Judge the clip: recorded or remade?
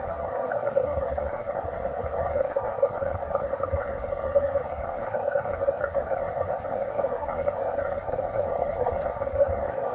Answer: remade